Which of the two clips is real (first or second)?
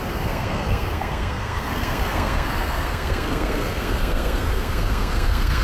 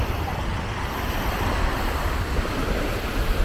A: second